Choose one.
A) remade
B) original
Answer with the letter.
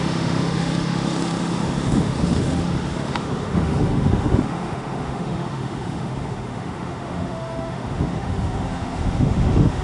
A